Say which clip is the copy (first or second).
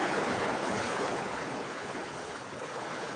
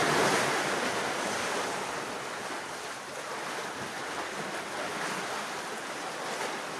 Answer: first